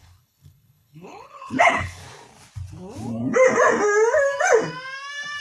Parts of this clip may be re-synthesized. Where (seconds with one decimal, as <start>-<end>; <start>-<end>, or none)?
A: 0.0-2.0

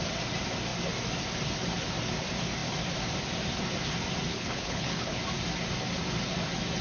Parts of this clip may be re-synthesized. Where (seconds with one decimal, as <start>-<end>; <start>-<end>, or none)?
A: 4.3-5.2

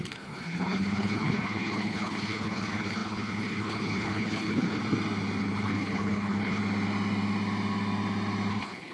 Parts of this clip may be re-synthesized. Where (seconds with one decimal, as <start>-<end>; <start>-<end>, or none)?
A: 0.0-4.8; 5.4-6.6; 8.5-8.9

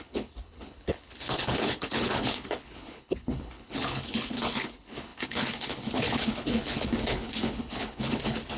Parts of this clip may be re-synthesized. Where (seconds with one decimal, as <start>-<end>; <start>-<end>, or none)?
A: 0.0-8.6

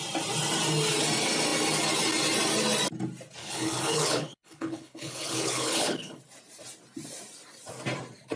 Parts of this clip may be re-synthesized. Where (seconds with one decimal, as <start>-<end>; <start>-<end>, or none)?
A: 3.4-6.2

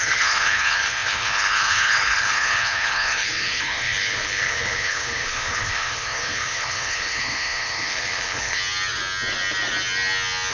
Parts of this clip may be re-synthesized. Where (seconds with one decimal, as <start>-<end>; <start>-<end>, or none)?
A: 0.0-8.6